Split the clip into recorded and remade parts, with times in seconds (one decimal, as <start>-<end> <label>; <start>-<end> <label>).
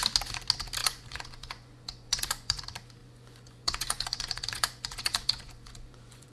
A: 0.0-0.8 recorded; 0.8-2.6 remade; 2.6-3.0 recorded; 3.0-6.3 remade